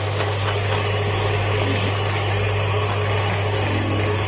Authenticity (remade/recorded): recorded